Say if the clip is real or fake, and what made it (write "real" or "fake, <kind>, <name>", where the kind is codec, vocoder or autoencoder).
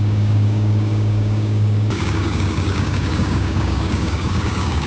fake, codec, DAC